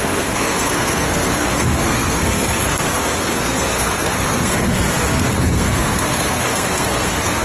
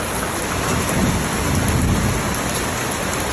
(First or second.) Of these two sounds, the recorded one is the second